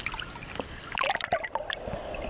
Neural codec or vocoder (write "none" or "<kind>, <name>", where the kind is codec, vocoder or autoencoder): none